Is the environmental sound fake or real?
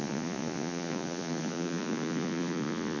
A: fake